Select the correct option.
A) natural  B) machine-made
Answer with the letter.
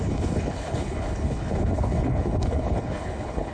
B